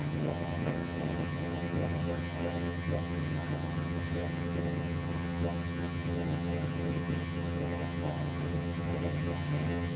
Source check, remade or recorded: remade